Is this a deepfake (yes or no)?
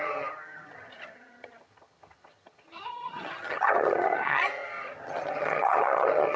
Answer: yes